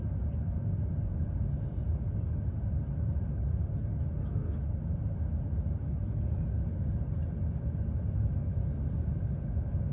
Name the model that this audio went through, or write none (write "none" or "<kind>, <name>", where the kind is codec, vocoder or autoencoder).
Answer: none